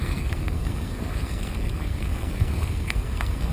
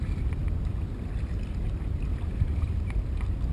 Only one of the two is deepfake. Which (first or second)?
first